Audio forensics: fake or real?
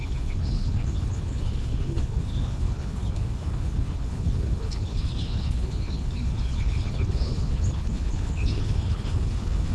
fake